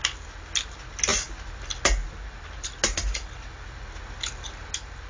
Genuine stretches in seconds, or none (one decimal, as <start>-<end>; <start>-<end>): 0.0-5.1